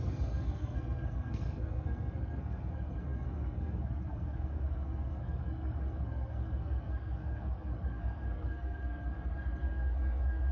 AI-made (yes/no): yes